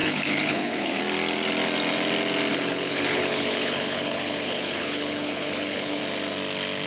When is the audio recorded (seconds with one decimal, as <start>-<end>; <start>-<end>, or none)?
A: 1.0-2.5; 6.0-6.9

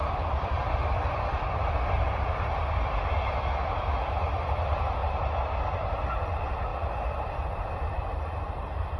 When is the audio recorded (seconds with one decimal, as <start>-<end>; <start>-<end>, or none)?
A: 0.0-5.0; 5.5-6.7

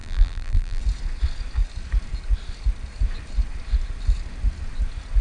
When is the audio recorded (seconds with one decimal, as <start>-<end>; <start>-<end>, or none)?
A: 0.8-5.2

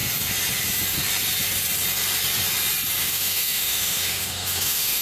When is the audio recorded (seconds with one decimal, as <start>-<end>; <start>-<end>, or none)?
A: 0.0-3.0